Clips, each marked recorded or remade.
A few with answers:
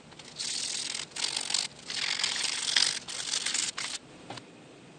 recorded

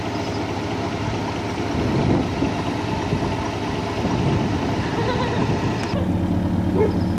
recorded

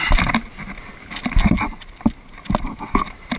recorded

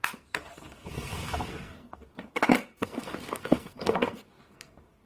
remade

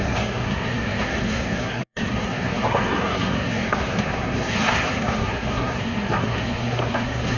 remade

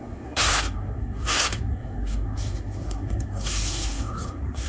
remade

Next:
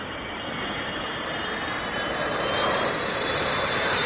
recorded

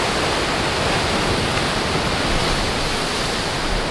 recorded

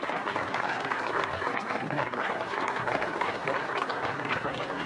remade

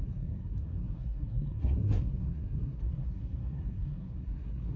remade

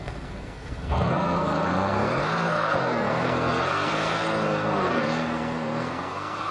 remade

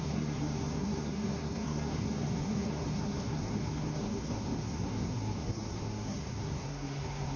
remade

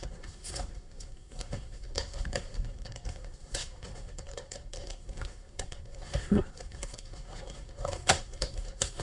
remade